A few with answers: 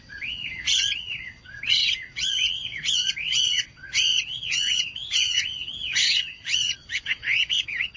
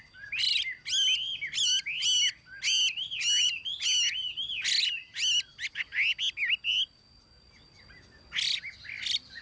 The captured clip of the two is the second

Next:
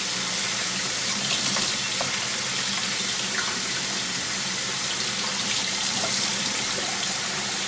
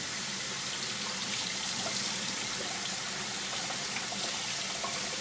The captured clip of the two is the first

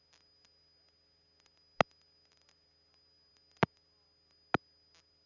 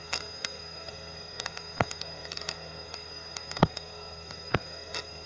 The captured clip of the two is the first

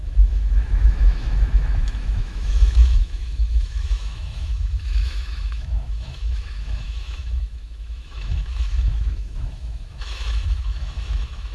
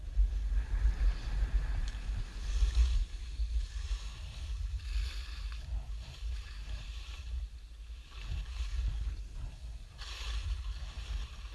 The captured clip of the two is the second